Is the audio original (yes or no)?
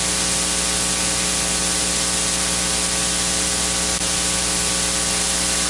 yes